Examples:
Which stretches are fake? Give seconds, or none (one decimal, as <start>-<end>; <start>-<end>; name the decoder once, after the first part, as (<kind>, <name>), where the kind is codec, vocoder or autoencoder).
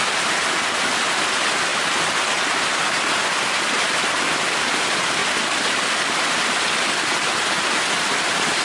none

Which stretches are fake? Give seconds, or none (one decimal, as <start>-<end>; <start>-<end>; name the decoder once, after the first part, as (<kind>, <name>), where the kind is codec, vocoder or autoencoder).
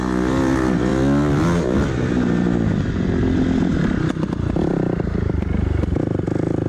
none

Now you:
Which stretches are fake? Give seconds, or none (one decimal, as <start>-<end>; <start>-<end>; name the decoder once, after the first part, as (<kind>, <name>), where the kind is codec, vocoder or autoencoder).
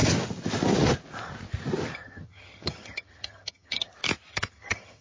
2.0-3.9 (vocoder, HiFi-GAN); 4.3-5.0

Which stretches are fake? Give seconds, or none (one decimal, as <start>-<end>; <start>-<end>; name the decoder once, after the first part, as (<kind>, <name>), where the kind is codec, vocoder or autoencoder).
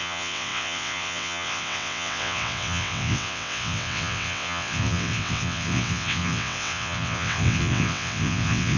0.0-8.8 (vocoder, WaveNeXt)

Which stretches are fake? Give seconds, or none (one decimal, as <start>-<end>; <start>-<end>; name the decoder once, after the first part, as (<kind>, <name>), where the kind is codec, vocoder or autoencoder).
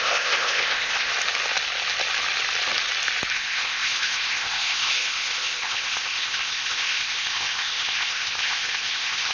0.0-1.1 (codec, ZipCodec); 3.3-9.3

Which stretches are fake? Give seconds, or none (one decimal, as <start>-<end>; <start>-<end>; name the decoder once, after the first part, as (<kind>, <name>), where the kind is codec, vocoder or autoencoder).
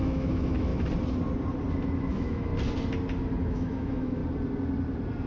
0.0-0.7 (autoencoder, DAC-VAE); 2.1-2.5; 3.4-4.2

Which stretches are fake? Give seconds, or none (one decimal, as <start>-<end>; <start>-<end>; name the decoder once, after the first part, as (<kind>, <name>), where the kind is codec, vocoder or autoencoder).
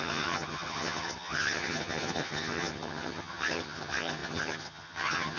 0.0-5.4 (vocoder, HiFi-GAN)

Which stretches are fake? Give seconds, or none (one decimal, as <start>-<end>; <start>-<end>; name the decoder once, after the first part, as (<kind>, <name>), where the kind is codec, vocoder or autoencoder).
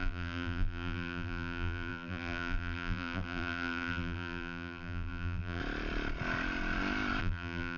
0.0-5.6 (vocoder, BigVGAN v2); 7.2-7.8